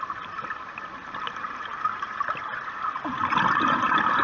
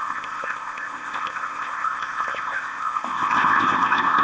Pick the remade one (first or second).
second